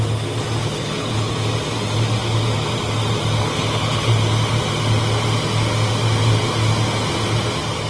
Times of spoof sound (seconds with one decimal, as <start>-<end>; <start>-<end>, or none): 0.6-1.3; 3.4-4.1